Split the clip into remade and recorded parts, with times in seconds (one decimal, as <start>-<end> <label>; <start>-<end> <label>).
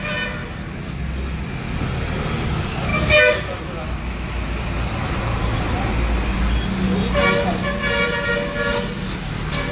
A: 0.0-9.7 recorded